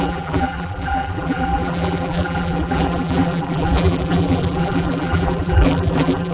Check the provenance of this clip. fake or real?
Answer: fake